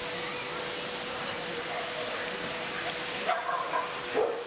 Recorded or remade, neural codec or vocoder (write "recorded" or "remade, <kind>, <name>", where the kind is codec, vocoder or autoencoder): recorded